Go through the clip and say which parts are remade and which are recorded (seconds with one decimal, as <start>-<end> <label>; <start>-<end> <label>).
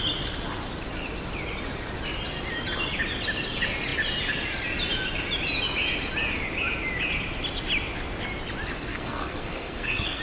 0.0-8.9 recorded; 8.9-10.2 remade